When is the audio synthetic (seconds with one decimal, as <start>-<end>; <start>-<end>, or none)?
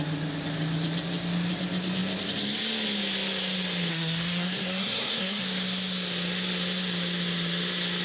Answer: 3.9-5.4